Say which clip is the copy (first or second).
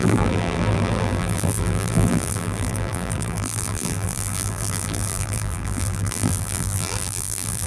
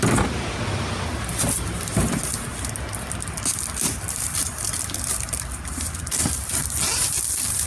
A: first